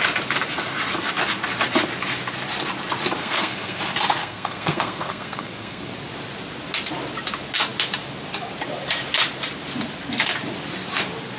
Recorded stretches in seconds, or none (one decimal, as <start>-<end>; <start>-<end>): 0.0-3.2; 3.8-4.2; 5.9-11.4